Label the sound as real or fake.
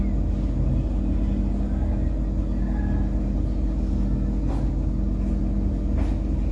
real